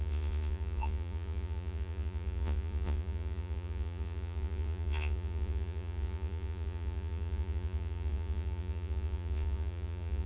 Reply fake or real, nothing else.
fake